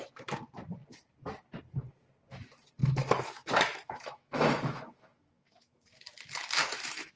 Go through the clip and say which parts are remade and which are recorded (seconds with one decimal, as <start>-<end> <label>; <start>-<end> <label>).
0.0-2.8 recorded; 2.8-6.0 remade; 6.0-6.6 recorded; 6.6-7.2 remade